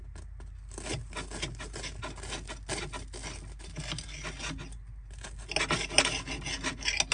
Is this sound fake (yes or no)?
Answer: no